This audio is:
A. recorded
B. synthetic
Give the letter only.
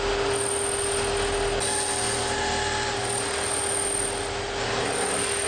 A